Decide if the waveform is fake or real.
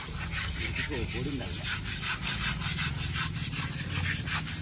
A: real